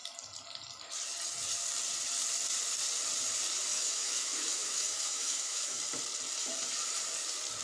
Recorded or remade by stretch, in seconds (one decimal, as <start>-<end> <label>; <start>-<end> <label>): 0.0-3.7 recorded; 3.7-5.8 remade; 5.8-7.6 recorded

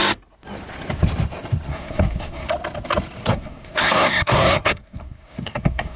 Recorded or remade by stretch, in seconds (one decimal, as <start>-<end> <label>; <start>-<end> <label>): 0.0-1.7 recorded; 1.7-2.5 remade; 2.5-3.2 recorded; 3.2-6.0 remade

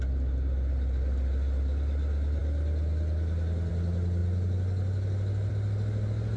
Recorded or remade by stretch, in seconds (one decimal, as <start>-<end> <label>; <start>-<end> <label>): 0.0-6.4 recorded

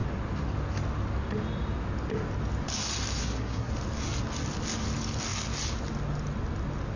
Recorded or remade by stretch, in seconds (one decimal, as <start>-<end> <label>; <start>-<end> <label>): 0.0-3.2 recorded; 3.2-3.7 remade; 3.7-7.0 recorded